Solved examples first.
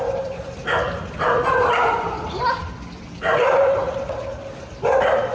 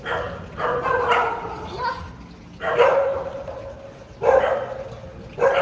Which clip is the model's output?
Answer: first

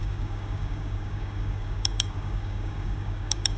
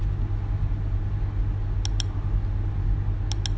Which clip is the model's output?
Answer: first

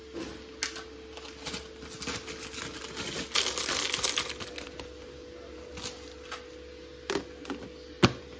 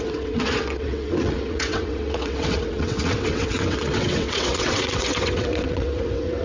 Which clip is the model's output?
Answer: second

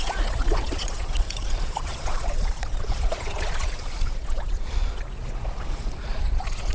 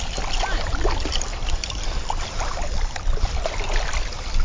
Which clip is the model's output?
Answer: first